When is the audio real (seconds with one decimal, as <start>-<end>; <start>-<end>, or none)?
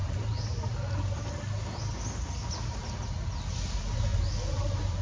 0.0-5.0